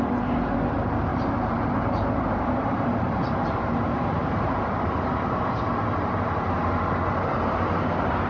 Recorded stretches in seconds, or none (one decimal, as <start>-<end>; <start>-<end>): 0.0-1.1; 5.6-8.3